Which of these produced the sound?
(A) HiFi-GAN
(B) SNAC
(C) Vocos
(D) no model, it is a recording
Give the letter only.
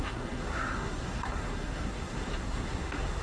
B